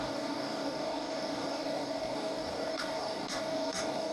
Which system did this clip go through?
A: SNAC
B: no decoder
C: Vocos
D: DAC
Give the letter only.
D